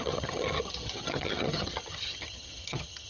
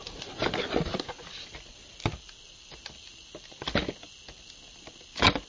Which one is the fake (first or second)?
first